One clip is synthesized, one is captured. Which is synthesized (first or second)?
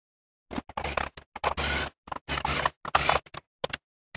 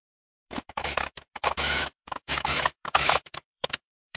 second